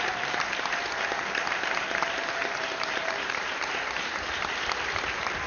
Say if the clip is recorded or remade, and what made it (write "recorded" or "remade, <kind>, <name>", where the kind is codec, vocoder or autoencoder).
remade, vocoder, BigVGAN v2